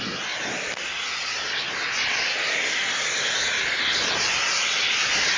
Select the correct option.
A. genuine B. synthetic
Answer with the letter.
A